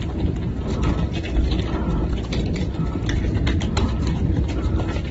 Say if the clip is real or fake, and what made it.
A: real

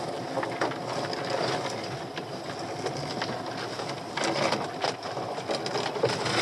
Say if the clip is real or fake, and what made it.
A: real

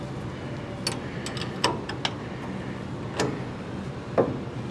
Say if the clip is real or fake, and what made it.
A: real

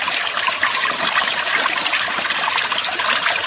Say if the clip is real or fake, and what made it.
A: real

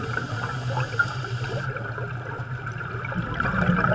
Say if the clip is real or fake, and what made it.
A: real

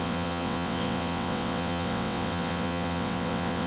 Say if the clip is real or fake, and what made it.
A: fake, vocoder, WaveNeXt